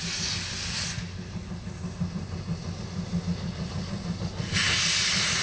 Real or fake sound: real